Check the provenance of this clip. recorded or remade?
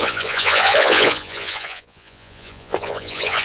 remade